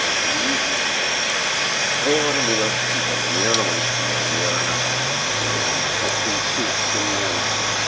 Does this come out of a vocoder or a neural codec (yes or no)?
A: no